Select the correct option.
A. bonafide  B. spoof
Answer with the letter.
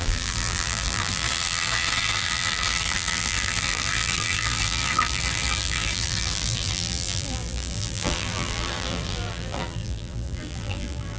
B